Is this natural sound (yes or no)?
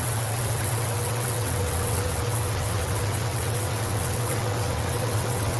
no